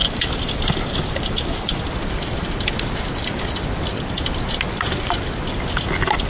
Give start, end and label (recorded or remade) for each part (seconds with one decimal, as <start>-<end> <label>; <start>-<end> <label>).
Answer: 0.0-1.8 remade; 1.8-6.3 recorded